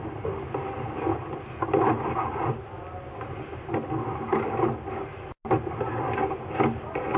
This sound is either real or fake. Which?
real